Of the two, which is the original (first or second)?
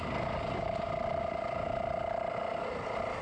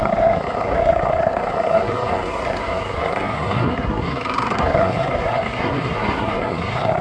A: first